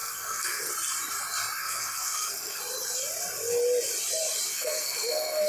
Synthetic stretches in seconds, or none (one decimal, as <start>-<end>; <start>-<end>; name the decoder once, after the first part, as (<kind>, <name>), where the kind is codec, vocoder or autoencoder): 0.0-0.7 (codec, SNAC); 1.6-2.6; 4.5-5.5

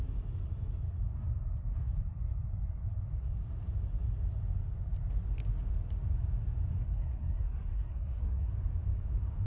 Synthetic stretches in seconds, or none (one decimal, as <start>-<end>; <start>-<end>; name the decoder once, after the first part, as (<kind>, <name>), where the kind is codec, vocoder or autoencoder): 6.7-8.5 (codec, SNAC)

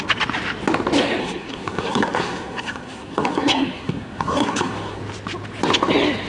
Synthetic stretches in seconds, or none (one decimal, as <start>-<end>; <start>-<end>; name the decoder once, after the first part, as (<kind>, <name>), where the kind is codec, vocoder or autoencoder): 1.2-5.0 (codec, SNAC)

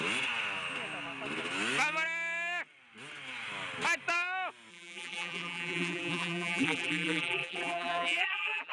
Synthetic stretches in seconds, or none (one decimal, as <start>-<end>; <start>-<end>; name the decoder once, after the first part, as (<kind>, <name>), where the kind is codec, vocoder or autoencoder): 4.7-8.7 (vocoder, BigVGAN v2)

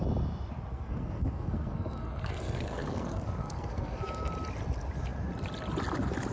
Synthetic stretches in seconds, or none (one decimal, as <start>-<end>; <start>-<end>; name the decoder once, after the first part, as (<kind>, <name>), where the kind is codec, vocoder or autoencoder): 0.7-4.3 (codec, SNAC)

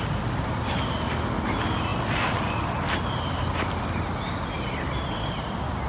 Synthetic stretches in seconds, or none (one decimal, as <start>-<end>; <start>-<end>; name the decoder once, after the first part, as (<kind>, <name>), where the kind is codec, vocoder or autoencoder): none